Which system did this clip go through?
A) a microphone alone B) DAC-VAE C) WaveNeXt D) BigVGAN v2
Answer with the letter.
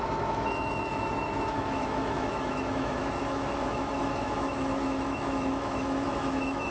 B